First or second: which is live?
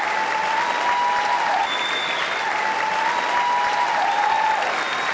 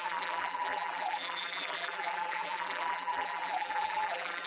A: first